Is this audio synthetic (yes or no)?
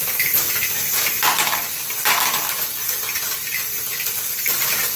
no